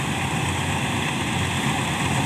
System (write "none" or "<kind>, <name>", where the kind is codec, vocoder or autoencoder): none